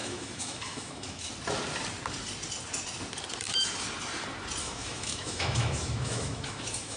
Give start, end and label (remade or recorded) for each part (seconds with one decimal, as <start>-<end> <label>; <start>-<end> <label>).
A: 0.0-1.3 remade; 1.3-4.6 recorded; 4.6-7.0 remade